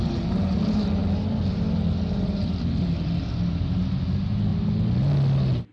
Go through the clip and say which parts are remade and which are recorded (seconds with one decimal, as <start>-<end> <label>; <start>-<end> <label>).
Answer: 0.0-5.7 recorded